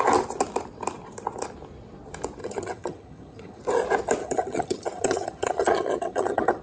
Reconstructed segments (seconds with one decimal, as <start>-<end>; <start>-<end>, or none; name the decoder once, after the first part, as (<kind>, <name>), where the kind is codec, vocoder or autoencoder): 2.4-3.6 (vocoder, HiFi-GAN); 4.2-6.6